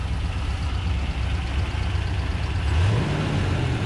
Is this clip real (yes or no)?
yes